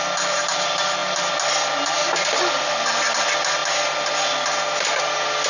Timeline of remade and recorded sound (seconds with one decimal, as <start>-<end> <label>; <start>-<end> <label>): 0.0-5.5 recorded